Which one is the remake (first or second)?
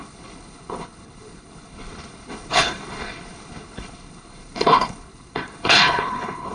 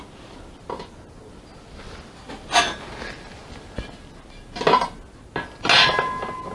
first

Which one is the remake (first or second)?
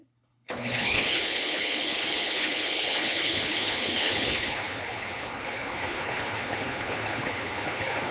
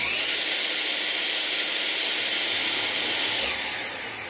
first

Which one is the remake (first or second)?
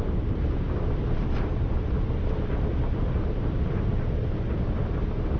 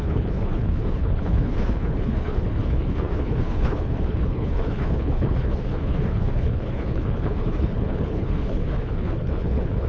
second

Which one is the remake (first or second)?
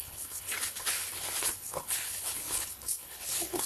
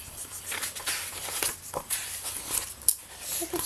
first